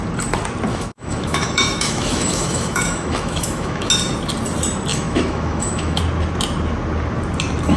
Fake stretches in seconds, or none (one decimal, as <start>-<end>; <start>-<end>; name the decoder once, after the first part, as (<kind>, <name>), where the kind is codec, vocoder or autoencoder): 0.7-3.9 (autoencoder, DAC-VAE); 4.9-6.0